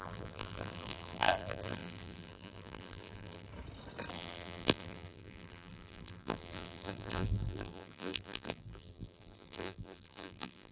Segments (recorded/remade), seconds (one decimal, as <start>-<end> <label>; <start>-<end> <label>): 0.0-3.5 remade; 3.5-4.1 recorded; 4.1-10.7 remade